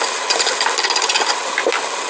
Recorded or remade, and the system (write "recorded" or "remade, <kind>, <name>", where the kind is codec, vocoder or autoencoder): recorded